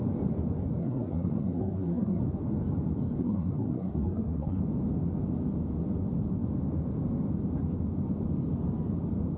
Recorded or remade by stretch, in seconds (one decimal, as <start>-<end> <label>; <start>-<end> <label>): 0.0-0.8 recorded; 0.8-2.2 remade; 2.2-3.2 recorded; 3.2-4.6 remade; 4.6-9.4 recorded